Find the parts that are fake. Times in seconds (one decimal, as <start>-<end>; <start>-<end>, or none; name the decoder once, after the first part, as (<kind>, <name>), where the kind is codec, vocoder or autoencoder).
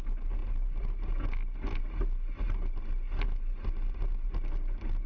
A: none